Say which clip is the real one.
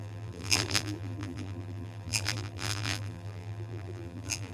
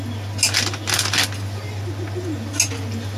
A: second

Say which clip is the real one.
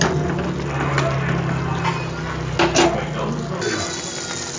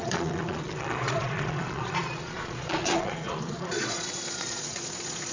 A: first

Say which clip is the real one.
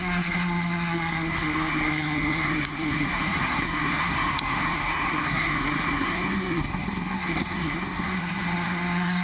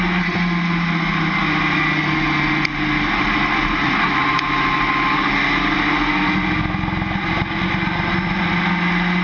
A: second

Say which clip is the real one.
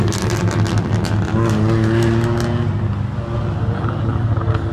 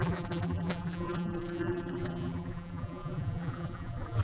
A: first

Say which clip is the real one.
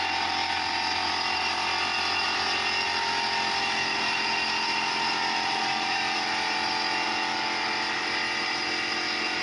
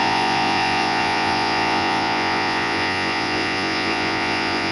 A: first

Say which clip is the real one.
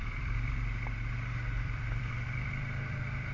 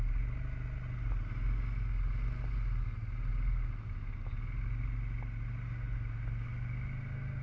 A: second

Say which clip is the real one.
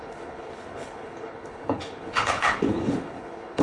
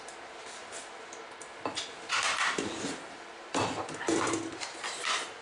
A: second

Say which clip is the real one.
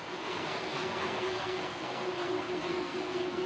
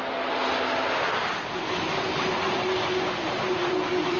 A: second